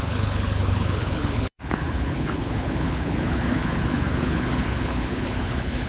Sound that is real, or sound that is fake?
fake